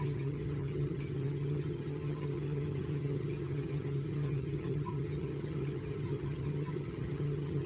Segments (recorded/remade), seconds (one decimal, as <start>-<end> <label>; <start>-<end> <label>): 0.0-7.7 remade